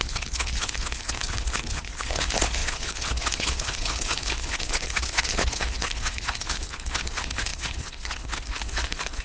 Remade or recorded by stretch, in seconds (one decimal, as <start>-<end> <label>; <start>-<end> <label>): 0.0-9.2 remade